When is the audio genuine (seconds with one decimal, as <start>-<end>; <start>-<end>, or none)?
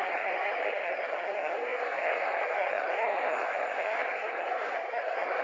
none